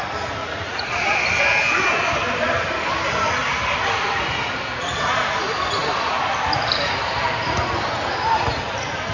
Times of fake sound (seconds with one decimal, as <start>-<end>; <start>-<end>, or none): 0.4-1.2